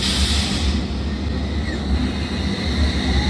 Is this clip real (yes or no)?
yes